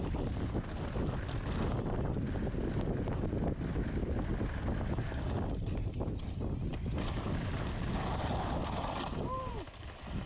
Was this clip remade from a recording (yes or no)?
no